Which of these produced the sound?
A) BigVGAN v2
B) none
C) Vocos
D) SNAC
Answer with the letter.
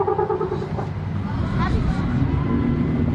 B